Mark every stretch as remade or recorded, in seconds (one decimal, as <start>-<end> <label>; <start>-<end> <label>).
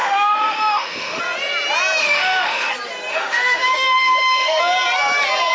0.0-1.2 remade; 1.2-2.0 recorded; 2.0-2.7 remade; 2.7-3.1 recorded; 3.1-4.6 remade; 4.6-5.5 recorded